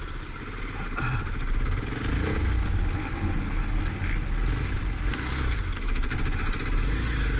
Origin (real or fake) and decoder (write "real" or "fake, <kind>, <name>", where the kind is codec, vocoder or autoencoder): real